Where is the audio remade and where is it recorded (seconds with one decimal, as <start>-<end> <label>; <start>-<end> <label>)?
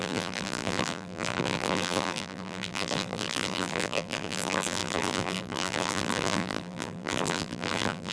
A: 0.0-8.1 remade